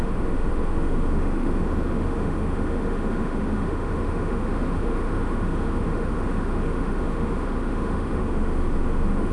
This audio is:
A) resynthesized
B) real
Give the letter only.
A